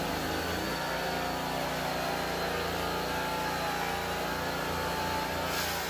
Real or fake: real